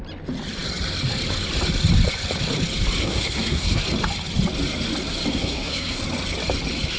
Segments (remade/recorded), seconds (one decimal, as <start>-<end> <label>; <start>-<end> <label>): 0.0-3.0 recorded; 3.0-3.8 remade; 3.8-5.3 recorded; 5.3-6.0 remade; 6.0-7.0 recorded